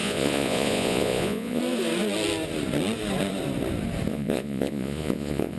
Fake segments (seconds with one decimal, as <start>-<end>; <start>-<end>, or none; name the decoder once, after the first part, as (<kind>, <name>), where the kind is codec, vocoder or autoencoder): 0.0-1.6 (vocoder, Vocos); 4.1-5.6